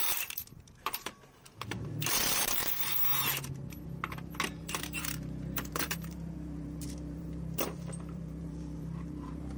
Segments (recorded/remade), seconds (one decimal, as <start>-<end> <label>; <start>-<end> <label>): 0.0-2.6 remade; 2.6-4.8 recorded; 4.8-9.6 remade